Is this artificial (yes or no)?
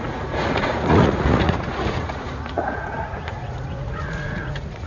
yes